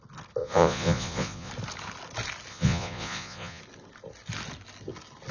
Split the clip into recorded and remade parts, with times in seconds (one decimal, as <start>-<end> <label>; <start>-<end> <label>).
0.0-0.4 recorded; 0.4-1.5 remade; 1.5-2.5 recorded; 2.5-3.6 remade; 3.6-5.3 recorded